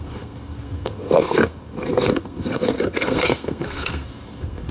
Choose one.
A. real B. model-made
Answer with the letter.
B